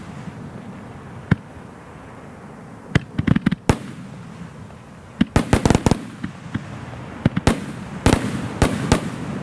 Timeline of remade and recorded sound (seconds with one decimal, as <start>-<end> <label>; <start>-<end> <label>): 0.0-9.4 recorded